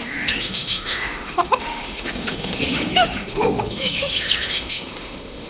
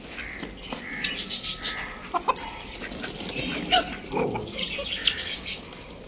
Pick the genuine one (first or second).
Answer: second